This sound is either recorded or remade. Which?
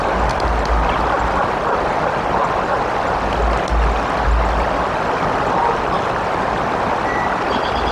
recorded